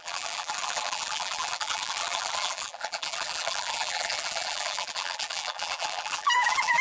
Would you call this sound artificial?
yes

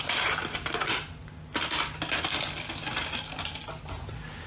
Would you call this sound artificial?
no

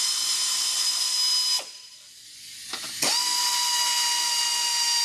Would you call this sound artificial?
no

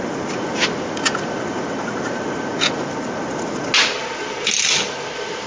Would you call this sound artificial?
no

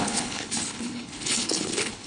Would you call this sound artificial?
yes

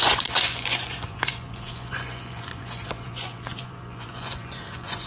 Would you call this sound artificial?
yes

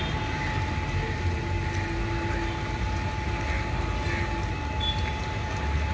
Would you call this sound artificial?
no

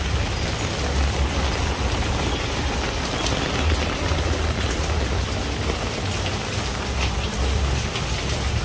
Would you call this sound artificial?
no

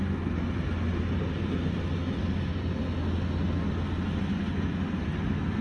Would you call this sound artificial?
no